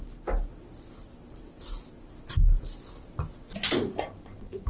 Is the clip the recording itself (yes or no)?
yes